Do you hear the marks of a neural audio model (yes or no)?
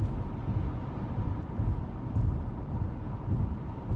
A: no